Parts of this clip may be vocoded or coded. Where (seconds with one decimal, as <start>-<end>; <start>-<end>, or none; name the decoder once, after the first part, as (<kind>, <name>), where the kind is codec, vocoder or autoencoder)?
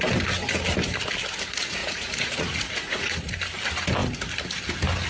1.8-3.3 (vocoder, Vocos)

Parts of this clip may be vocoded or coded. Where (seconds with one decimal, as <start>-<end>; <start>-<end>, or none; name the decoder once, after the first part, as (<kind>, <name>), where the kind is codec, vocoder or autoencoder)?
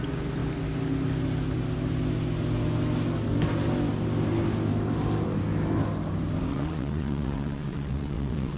6.5-8.6 (vocoder, WaveNeXt)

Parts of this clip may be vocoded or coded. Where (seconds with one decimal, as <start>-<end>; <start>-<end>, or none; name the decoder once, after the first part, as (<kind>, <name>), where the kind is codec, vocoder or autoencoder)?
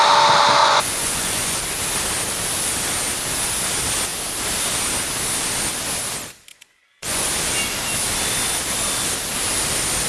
0.6-1.6 (vocoder, Vocos); 6.5-7.3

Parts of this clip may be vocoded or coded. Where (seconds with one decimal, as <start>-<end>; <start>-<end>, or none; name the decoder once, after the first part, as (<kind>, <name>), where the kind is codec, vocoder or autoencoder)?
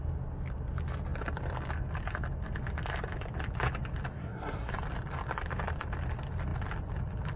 4.2-4.7 (codec, SNAC)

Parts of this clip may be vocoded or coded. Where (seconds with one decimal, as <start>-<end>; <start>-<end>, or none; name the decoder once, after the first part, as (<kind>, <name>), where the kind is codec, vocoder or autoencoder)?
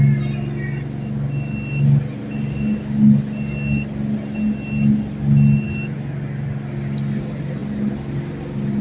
none